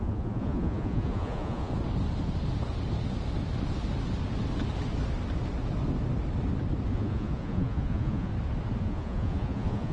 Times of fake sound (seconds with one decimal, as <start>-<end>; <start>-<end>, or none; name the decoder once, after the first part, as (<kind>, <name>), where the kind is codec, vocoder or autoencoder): 0.0-1.7 (vocoder, Vocos); 6.9-8.3; 8.8-9.9